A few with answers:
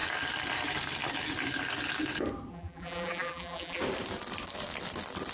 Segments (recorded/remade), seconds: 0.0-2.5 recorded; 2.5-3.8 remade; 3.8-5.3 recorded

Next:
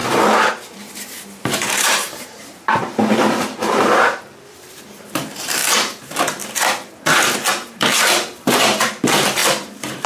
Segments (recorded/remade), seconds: 0.0-5.6 remade; 5.6-7.5 recorded; 7.5-10.1 remade

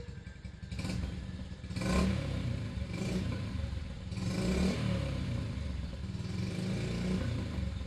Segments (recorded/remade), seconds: 0.0-2.1 recorded; 2.1-3.8 remade; 3.8-7.9 recorded

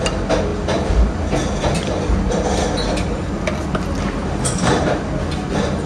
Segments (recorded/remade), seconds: 0.0-4.2 recorded; 4.2-5.1 remade; 5.1-5.9 recorded

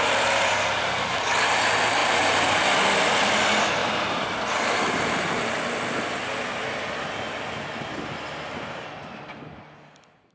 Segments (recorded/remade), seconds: 0.0-2.0 recorded; 2.0-2.6 remade; 2.6-3.8 recorded; 3.8-5.5 remade; 5.5-10.3 recorded